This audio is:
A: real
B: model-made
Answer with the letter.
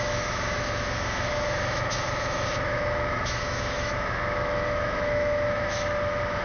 B